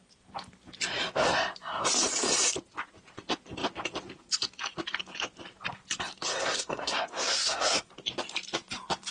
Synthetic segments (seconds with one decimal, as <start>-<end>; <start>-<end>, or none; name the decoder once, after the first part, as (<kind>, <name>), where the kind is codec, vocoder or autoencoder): 6.4-7.9 (codec, SNAC)